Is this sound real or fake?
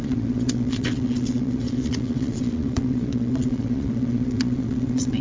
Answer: fake